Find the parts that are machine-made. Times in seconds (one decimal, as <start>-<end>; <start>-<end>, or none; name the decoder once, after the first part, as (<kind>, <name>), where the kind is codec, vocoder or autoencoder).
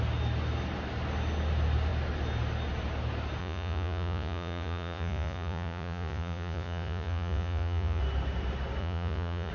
3.4-8.0 (vocoder, Vocos); 8.8-9.5